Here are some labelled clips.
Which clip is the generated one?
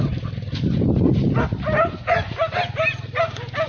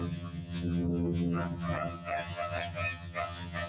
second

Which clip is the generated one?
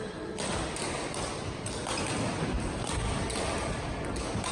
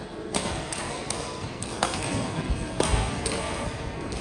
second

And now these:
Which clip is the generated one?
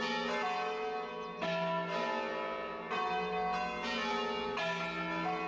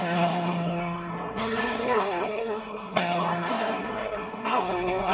second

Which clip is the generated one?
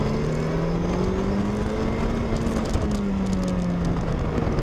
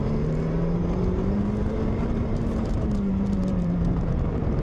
second